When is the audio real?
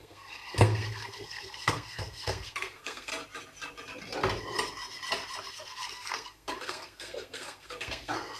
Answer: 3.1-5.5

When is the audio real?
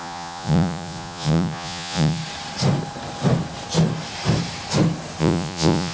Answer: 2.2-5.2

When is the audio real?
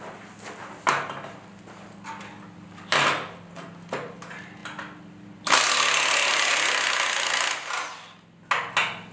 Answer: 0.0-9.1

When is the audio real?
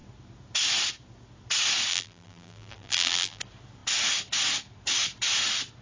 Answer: 0.0-1.9; 3.4-5.8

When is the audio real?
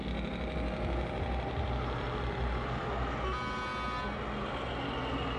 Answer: 0.0-5.4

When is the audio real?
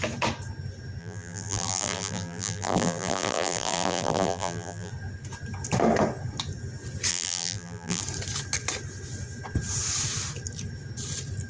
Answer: 0.0-1.0; 4.9-7.1; 8.0-11.5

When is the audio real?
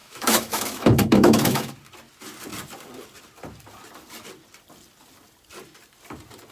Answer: 1.7-6.5